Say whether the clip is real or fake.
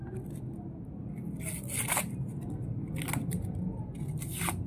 real